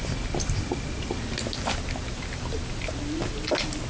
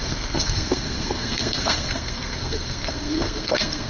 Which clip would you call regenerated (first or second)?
second